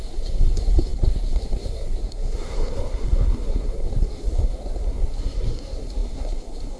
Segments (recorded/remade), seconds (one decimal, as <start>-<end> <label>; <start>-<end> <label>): 0.0-6.8 remade